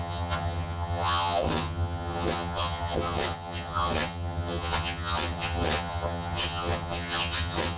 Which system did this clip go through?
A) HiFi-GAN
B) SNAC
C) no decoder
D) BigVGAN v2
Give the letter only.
A